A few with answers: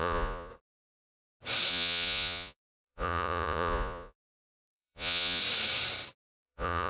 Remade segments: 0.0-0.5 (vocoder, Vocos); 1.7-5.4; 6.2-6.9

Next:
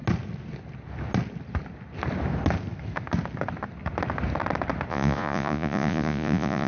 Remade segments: 4.9-6.7 (vocoder, Vocos)